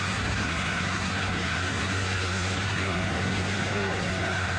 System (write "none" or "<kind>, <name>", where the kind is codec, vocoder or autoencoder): codec, SNAC